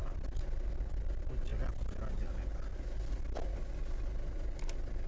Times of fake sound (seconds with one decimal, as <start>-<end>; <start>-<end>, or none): none